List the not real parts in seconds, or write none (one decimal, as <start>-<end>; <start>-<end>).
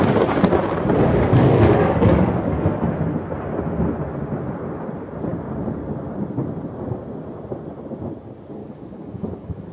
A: 1.3-2.7; 8.6-9.7